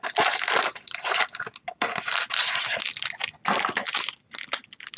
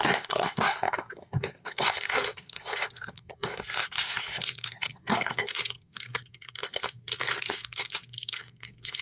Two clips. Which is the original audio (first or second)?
first